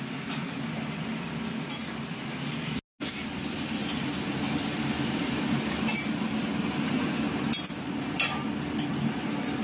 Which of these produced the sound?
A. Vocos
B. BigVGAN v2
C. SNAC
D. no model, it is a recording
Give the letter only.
D